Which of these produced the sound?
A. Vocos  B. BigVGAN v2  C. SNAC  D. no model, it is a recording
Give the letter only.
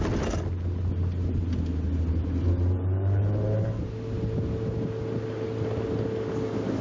D